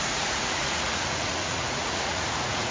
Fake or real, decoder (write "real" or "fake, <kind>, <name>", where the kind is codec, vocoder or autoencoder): fake, vocoder, Vocos